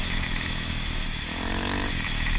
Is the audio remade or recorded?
remade